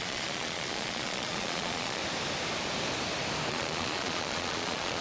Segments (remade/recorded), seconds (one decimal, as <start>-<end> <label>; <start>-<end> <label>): 0.0-2.0 remade; 2.0-3.5 recorded; 3.5-5.0 remade